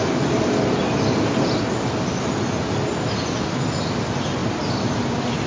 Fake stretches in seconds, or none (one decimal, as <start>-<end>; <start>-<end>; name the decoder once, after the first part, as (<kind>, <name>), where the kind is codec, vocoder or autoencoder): none